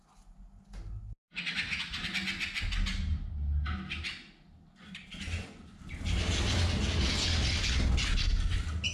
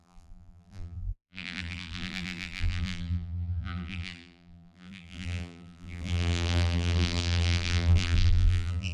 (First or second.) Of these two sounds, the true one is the first